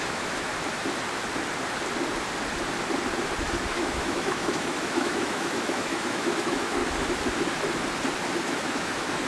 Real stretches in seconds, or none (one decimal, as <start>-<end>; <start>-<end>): 0.5-3.7; 6.8-8.4